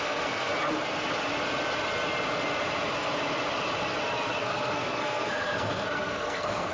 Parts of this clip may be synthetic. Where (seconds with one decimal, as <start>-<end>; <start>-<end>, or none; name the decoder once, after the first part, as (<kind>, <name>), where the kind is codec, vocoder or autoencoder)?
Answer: 0.0-0.5 (codec, SNAC); 4.4-6.7